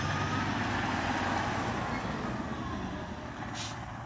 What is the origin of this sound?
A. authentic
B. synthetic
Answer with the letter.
A